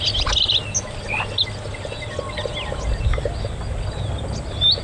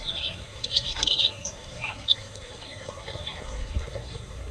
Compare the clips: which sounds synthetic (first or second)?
second